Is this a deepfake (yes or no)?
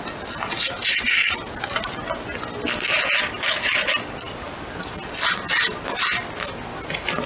no